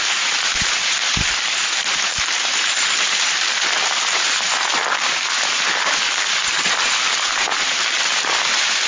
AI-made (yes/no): yes